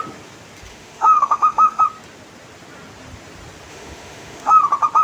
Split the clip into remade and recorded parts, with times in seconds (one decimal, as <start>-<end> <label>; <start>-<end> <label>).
0.0-0.7 recorded; 0.7-1.8 remade; 1.8-3.7 recorded; 3.7-4.5 remade; 4.5-5.0 recorded